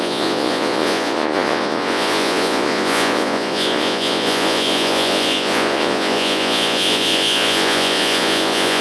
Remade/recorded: remade